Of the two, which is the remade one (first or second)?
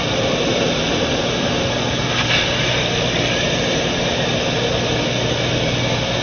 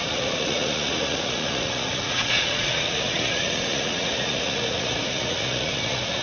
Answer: second